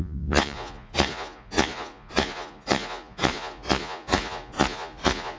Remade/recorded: remade